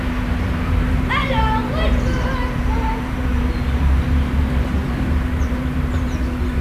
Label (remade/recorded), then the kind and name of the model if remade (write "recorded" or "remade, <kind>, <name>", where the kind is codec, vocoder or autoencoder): remade, vocoder, BigVGAN v2